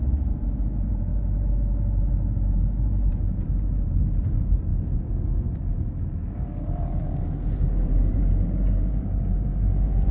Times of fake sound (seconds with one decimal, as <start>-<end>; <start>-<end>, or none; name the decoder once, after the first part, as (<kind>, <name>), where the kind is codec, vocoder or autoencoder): 0.0-1.1 (vocoder, BigVGAN v2); 2.6-4.7; 5.4-10.1